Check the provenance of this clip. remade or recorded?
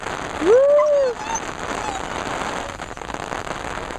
recorded